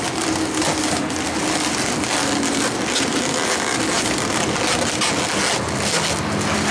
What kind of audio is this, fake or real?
real